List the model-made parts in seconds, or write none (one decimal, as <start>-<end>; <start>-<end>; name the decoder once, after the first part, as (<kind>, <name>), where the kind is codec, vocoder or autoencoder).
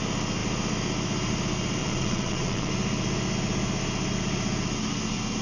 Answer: 1.8-2.7 (vocoder, WaveNeXt)